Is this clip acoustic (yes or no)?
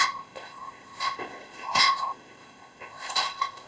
no